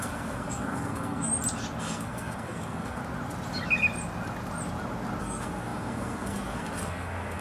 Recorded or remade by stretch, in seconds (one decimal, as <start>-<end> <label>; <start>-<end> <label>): 0.0-1.3 remade; 1.3-1.8 recorded; 1.8-3.0 remade; 3.0-5.2 recorded; 5.2-7.4 remade